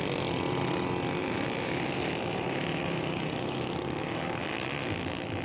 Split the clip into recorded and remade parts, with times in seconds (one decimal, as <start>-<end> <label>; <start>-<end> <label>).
0.0-1.2 recorded; 1.2-4.4 remade; 4.4-5.4 recorded